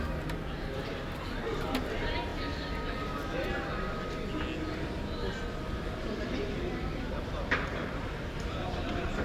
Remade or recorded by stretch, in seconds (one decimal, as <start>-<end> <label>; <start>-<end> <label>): 0.0-2.3 remade; 2.3-7.0 recorded; 7.0-9.2 remade